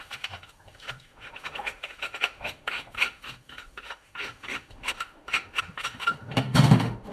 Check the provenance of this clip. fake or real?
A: fake